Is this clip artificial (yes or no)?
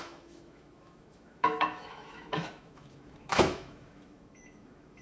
yes